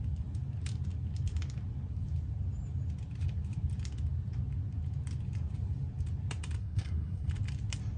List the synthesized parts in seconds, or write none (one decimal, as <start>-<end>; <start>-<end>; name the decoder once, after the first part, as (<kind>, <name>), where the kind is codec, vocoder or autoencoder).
6.6-7.3 (codec, SNAC)